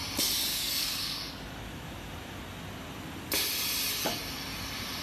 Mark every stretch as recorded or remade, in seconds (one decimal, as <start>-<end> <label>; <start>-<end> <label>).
0.0-0.5 recorded; 0.5-1.3 remade; 1.3-5.0 recorded